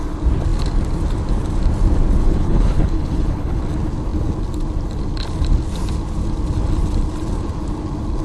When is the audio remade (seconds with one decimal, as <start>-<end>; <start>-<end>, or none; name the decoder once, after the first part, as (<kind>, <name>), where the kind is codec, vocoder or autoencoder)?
2.2-3.6 (codec, HILCodec)